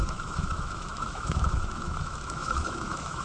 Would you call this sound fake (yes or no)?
yes